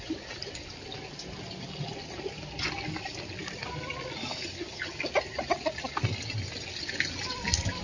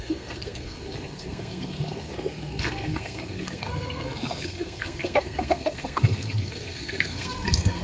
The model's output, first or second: second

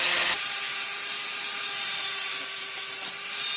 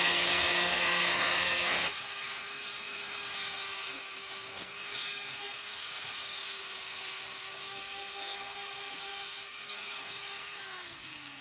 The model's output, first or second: second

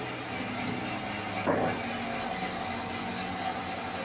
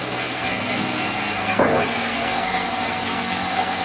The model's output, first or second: second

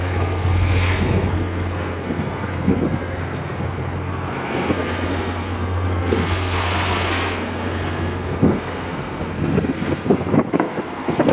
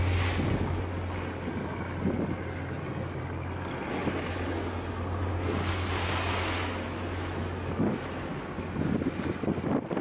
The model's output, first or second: first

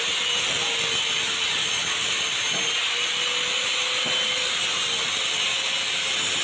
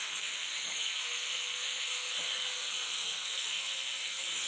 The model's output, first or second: second